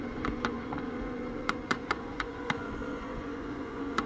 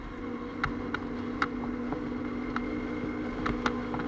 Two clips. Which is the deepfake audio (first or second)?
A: first